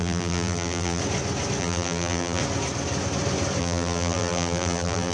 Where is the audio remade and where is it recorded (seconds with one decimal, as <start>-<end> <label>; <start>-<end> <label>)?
0.0-1.0 remade; 1.0-1.6 recorded; 1.6-2.4 remade; 2.4-3.6 recorded; 3.6-5.1 remade